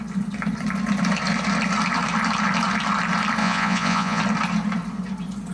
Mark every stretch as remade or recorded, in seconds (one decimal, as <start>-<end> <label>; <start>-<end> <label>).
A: 0.0-3.4 recorded; 3.4-4.2 remade; 4.2-5.5 recorded